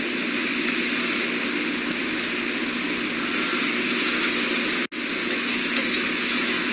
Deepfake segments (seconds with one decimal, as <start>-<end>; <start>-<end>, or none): 5.2-6.7